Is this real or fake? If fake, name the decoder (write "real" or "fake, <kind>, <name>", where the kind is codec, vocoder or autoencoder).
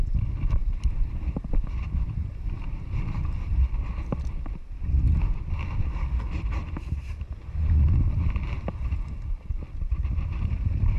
real